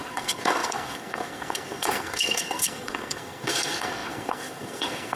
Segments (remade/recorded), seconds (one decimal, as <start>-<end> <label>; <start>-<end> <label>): 0.0-5.2 remade

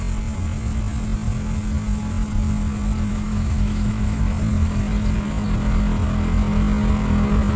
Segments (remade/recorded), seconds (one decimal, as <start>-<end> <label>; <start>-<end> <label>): 0.0-3.1 recorded; 3.1-4.2 remade; 4.2-7.6 recorded

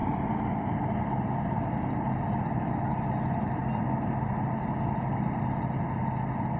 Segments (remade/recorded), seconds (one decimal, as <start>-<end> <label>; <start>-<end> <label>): 0.0-6.6 recorded

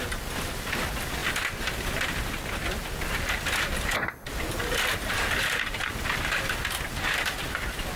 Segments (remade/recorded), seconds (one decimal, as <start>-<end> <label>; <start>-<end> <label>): 0.0-8.0 recorded

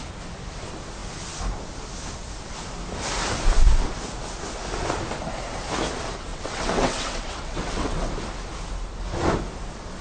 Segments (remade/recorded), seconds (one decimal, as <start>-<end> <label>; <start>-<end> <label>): 0.0-6.3 recorded; 6.3-8.1 remade; 8.1-10.0 recorded

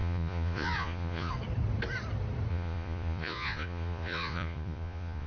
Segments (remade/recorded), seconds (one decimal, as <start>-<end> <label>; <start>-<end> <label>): 0.0-1.3 remade; 1.3-2.5 recorded; 2.5-5.3 remade